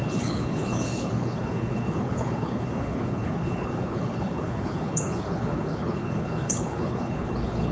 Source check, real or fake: fake